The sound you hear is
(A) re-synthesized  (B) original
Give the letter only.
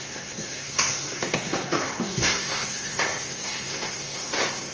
A